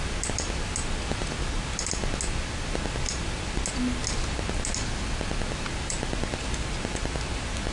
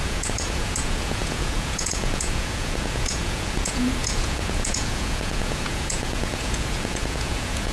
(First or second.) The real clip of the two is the first